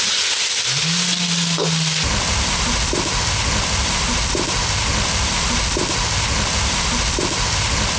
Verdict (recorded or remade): recorded